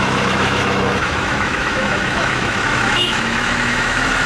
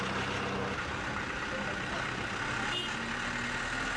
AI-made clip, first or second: first